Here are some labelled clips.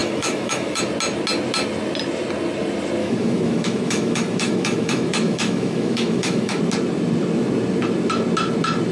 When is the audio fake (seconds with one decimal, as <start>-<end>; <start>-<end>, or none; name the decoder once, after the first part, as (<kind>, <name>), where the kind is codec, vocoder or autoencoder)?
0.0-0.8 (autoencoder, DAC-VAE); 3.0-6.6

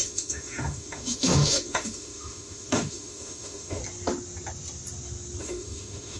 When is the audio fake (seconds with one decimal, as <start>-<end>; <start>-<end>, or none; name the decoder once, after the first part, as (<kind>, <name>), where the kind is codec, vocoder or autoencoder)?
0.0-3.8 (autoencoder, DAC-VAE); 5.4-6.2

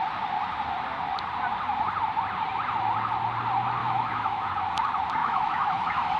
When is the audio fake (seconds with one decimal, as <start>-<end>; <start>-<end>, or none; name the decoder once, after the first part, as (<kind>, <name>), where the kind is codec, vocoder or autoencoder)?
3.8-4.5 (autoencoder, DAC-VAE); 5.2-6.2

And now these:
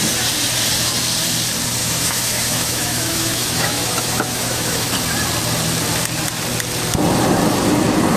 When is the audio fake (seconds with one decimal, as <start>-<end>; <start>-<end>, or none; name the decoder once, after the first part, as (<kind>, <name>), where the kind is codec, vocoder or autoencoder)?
1.8-4.9 (autoencoder, DAC-VAE)

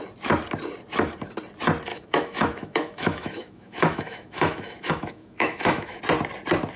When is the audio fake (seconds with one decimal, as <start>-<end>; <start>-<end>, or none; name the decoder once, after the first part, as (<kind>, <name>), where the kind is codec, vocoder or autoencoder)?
1.9-6.0 (autoencoder, DAC-VAE)

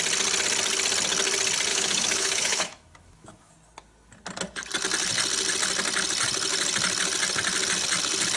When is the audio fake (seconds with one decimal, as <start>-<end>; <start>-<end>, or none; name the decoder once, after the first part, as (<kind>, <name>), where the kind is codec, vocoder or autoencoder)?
1.7-3.5 (autoencoder, DAC-VAE)

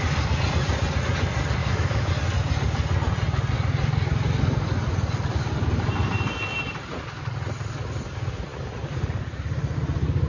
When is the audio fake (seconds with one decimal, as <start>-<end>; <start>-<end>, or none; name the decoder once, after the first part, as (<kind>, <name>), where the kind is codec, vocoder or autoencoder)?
1.6-2.1 (autoencoder, DAC-VAE)